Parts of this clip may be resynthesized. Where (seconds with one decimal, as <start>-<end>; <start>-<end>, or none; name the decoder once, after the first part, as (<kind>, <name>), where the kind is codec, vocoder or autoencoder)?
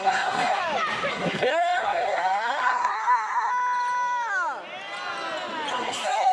0.0-0.6 (codec, SNAC); 1.1-3.5; 5.7-6.3